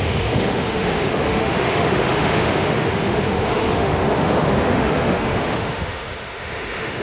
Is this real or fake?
fake